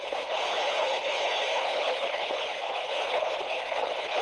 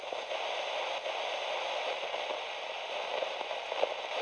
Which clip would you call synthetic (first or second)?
first